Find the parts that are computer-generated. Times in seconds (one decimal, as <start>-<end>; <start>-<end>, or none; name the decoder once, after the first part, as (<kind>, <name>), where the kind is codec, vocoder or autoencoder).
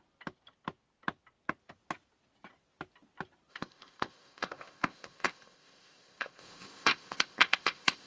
3.5-8.1 (codec, ZipCodec)